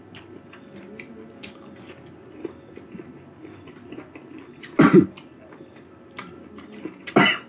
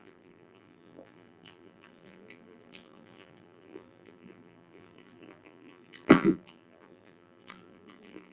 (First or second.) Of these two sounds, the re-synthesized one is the second